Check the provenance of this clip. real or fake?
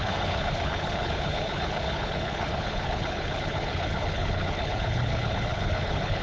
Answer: fake